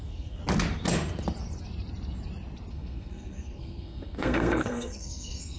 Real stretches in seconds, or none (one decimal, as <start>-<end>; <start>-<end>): 0.4-2.7